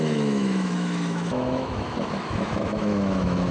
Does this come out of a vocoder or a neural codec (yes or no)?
yes